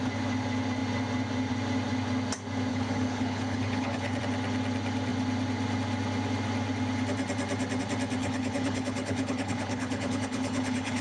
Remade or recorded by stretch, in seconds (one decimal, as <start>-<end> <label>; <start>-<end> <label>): 0.0-2.7 recorded; 2.7-4.2 remade; 4.2-8.2 recorded; 8.2-11.0 remade